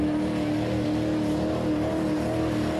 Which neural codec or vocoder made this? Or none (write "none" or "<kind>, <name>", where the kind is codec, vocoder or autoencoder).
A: none